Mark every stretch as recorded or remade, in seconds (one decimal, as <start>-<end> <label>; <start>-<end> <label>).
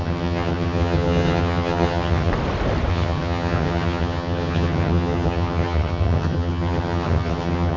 0.0-2.3 remade; 2.3-2.9 recorded; 2.9-7.8 remade